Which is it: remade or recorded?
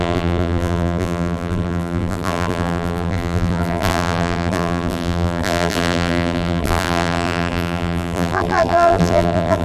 remade